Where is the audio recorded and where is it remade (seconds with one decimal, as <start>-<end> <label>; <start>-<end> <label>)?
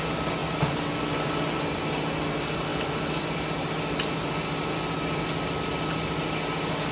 0.0-0.4 remade; 0.4-1.4 recorded; 1.4-2.7 remade; 2.7-6.0 recorded; 6.0-6.9 remade